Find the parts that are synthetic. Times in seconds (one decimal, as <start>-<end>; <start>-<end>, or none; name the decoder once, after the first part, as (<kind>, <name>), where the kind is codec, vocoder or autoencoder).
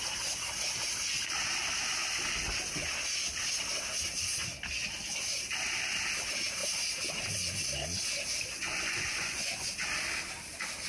8.5-9.7 (vocoder, Vocos)